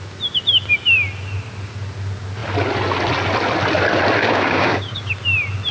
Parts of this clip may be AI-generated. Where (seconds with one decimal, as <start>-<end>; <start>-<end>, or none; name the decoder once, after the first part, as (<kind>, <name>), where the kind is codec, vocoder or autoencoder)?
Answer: 4.2-5.1 (codec, DAC)